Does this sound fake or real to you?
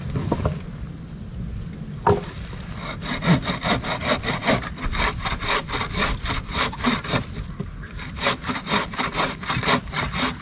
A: real